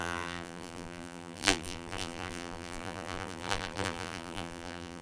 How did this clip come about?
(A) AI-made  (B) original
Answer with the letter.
A